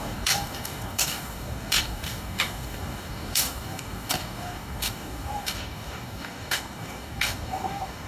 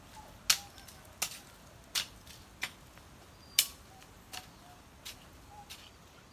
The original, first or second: second